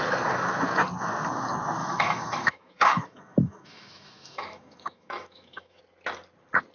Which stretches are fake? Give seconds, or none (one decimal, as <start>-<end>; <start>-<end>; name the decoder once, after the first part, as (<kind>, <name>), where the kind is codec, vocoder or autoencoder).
1.8-5.8 (autoencoder, DAC-VAE)